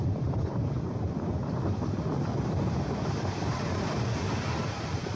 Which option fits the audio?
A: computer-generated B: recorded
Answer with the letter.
A